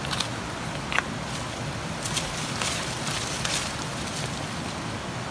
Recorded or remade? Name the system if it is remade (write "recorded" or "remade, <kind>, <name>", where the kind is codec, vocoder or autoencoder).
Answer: recorded